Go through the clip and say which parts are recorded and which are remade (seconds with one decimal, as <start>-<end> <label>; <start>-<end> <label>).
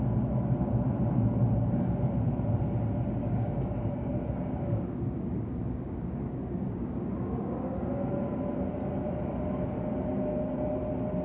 0.0-3.2 recorded; 3.2-7.8 remade; 7.8-11.2 recorded